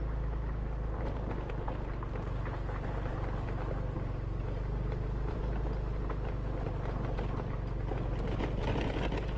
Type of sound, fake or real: real